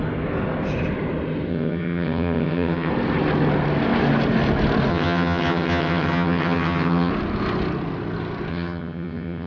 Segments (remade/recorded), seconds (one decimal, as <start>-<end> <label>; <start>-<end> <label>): 0.0-1.5 recorded; 1.5-2.9 remade; 2.9-4.9 recorded; 4.9-7.1 remade; 7.1-8.5 recorded; 8.5-9.5 remade